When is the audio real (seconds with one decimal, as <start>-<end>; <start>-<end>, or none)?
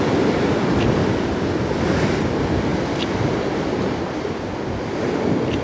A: 0.0-5.6